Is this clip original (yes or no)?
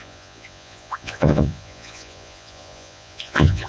no